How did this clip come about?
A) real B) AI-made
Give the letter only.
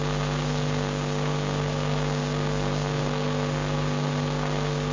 B